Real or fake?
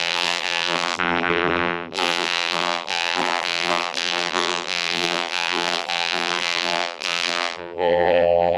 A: fake